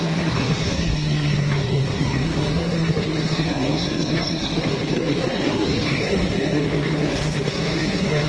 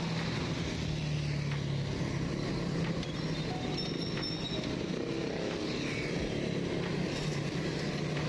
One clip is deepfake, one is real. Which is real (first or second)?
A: second